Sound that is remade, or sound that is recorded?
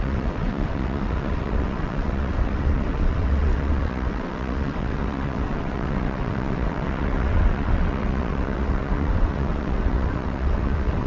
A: remade